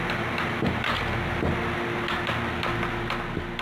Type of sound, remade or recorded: recorded